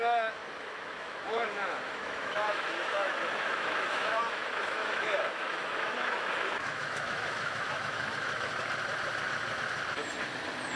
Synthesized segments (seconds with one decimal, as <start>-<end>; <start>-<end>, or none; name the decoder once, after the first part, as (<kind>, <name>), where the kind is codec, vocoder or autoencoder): 0.0-8.5 (autoencoder, DAC-VAE)